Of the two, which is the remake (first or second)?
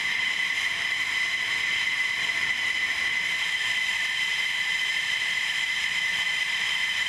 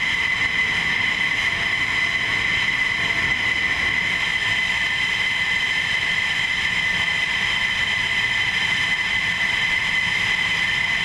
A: first